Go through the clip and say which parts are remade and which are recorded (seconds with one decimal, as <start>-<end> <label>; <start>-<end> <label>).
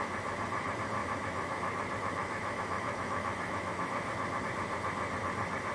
0.0-1.0 recorded; 1.0-4.4 remade; 4.4-5.7 recorded